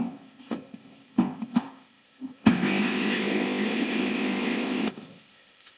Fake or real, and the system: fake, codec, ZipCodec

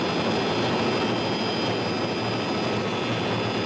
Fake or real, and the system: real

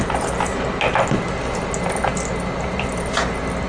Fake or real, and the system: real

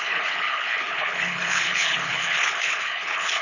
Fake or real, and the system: fake, codec, HILCodec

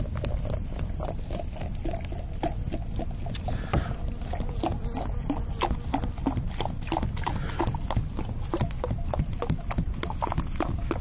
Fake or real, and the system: real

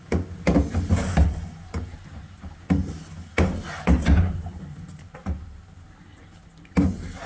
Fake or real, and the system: real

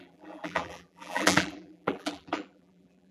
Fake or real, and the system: fake, vocoder, BigVGAN v2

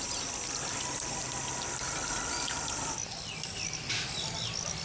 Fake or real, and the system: real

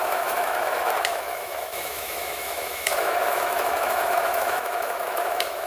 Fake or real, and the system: fake, autoencoder, DAC-VAE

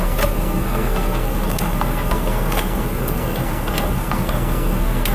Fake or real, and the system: fake, codec, SNAC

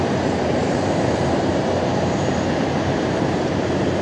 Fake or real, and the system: fake, vocoder, BigVGAN v2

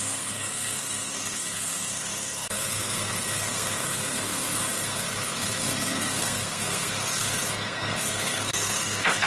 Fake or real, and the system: fake, codec, SNAC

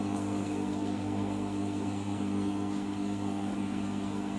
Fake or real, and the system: fake, codec, SNAC